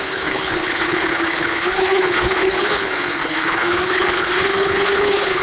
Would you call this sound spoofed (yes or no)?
yes